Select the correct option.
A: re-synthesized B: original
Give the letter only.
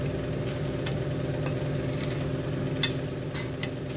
B